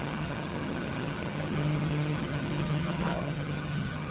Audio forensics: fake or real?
fake